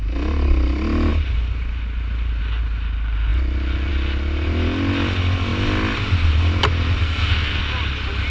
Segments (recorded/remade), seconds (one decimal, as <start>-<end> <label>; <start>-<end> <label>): 0.0-7.0 recorded; 7.0-7.6 remade; 7.6-8.3 recorded